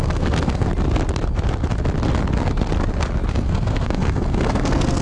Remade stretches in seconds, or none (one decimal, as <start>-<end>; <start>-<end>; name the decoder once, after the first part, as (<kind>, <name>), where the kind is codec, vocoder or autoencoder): 0.0-0.7 (codec, SNAC); 3.3-5.0